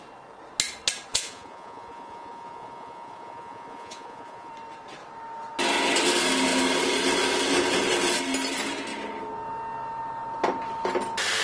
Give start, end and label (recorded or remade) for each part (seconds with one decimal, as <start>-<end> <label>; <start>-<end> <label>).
0.0-1.1 recorded; 1.1-4.5 remade; 4.5-11.4 recorded